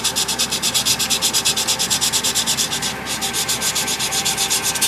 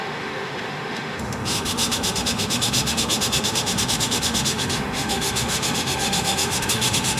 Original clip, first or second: first